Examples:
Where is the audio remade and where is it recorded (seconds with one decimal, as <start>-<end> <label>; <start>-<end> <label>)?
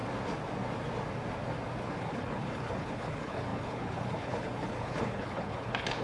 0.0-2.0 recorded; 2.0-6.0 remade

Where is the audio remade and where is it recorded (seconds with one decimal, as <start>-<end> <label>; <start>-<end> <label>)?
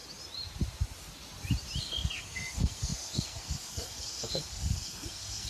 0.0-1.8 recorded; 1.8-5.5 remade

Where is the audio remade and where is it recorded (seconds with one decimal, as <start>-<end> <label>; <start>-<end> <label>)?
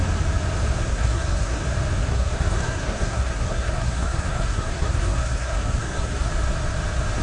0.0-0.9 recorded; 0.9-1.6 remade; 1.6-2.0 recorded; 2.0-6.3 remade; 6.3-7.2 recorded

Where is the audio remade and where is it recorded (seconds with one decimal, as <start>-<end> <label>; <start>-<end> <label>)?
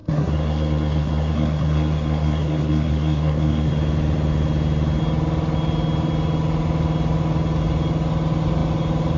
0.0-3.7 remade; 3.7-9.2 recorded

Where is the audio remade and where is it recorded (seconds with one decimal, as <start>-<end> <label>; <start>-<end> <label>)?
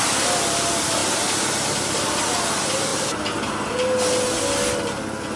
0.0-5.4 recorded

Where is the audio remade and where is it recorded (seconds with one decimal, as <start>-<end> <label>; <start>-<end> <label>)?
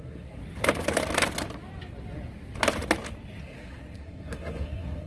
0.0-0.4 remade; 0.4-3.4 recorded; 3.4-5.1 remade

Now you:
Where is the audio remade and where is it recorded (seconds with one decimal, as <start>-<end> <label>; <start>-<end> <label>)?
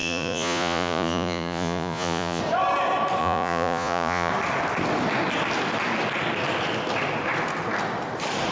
0.0-2.4 remade; 2.4-3.2 recorded; 3.2-4.3 remade; 4.3-8.5 recorded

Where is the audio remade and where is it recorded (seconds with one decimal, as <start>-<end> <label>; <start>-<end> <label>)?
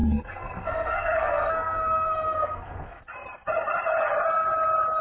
0.0-3.0 remade; 3.0-5.0 recorded